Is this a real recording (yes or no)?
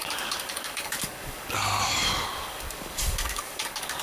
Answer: no